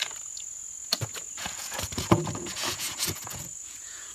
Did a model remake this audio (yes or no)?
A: yes